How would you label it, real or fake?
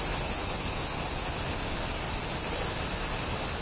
real